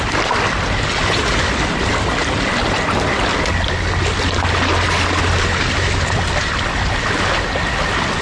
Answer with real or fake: real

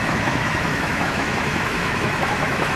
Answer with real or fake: fake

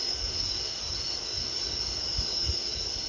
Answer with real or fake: real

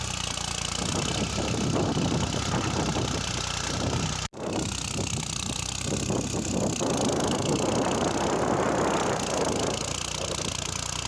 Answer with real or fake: real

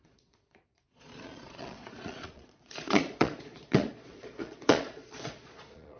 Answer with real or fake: fake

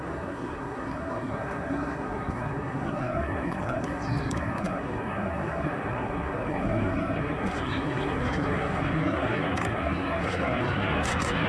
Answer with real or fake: fake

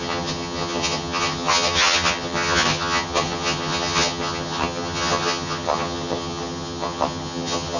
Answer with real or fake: fake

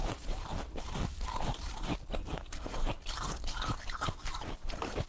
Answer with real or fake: fake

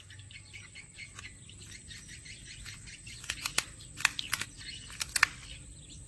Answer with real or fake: real